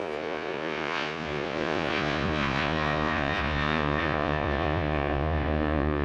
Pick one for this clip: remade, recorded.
remade